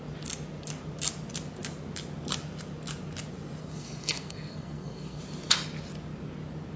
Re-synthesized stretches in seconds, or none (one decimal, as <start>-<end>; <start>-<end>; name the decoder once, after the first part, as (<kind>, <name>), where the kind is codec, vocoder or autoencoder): 3.6-5.2 (codec, SNAC)